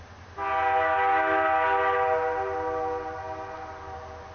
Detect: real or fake real